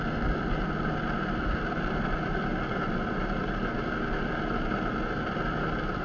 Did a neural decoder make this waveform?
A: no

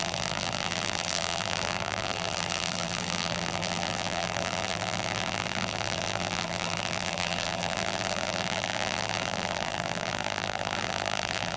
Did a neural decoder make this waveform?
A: yes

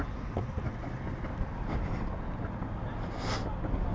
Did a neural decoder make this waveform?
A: no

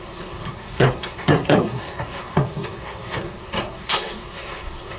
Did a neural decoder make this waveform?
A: yes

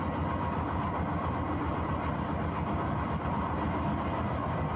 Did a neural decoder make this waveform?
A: no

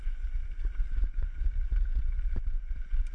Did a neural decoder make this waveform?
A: yes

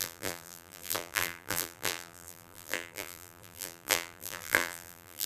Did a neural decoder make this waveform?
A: yes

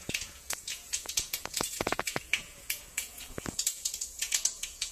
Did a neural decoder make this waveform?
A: yes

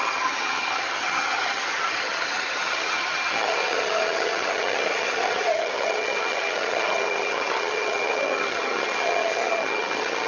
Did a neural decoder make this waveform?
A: yes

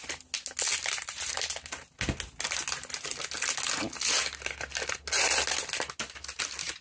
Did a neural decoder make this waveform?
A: no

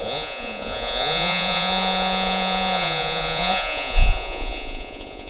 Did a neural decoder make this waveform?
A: yes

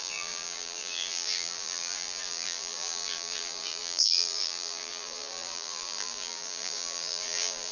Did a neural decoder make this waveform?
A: yes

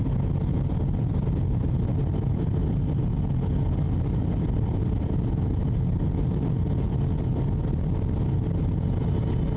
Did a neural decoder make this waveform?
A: no